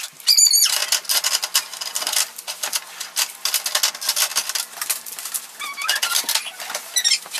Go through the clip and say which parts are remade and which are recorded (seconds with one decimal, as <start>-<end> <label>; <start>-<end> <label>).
0.0-7.4 recorded